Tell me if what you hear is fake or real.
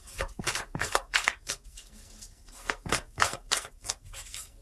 fake